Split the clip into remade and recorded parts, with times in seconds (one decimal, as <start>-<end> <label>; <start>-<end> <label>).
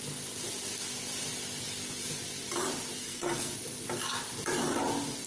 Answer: 0.0-3.0 recorded; 3.0-3.5 remade; 3.5-5.3 recorded